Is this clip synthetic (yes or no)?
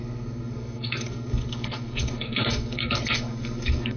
yes